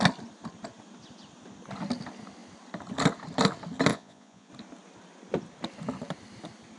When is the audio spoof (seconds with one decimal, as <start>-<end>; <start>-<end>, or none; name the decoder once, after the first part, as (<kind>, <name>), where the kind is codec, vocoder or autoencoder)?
3.9-4.5 (vocoder, Vocos)